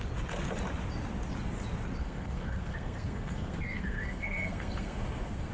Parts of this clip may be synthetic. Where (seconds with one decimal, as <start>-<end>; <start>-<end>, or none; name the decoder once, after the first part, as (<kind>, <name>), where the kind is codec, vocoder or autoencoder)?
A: 2.0-5.5 (codec, SNAC)